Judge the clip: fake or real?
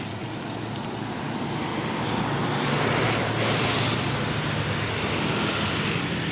real